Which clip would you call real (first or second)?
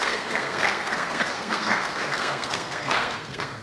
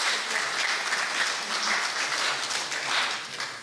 second